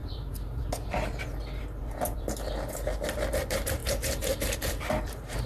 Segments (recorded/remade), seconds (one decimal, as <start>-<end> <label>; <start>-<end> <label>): 0.0-3.3 recorded; 3.3-5.5 remade